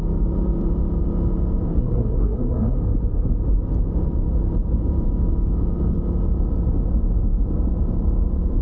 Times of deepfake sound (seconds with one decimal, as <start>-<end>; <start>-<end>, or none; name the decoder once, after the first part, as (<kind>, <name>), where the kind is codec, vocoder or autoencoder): 1.7-2.8 (codec, SNAC)